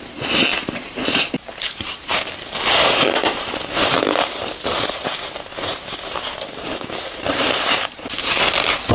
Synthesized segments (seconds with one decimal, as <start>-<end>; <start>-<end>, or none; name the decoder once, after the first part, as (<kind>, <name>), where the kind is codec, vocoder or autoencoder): 0.0-2.1 (vocoder, BigVGAN v2); 2.7-8.2